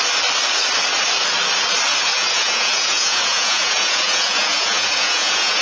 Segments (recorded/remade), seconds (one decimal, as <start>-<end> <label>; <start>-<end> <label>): 0.0-2.1 recorded; 2.1-5.6 remade